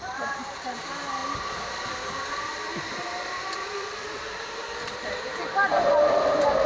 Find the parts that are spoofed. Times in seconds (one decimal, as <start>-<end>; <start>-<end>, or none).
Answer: 0.0-6.7